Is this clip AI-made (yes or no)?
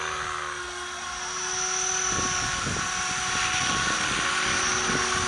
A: no